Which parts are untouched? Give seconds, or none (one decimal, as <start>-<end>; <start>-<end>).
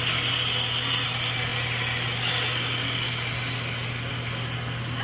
0.0-5.0